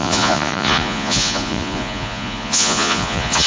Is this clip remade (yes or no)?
yes